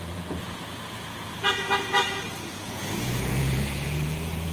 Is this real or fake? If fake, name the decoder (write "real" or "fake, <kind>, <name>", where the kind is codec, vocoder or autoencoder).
fake, vocoder, Vocos